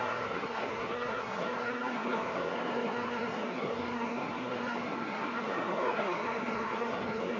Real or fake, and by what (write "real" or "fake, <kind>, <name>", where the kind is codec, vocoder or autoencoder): fake, codec, SNAC